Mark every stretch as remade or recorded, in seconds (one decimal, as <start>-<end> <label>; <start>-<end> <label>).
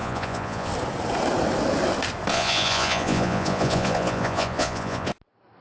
0.0-0.7 remade; 0.7-2.3 recorded; 2.3-5.1 remade; 5.1-5.6 recorded